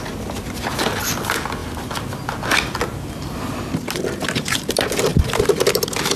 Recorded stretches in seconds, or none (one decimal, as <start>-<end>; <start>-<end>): 0.0-6.2